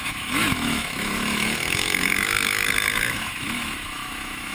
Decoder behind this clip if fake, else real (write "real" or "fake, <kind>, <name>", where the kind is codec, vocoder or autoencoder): fake, autoencoder, DAC-VAE